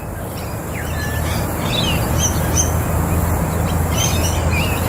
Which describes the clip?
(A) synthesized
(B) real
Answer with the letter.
B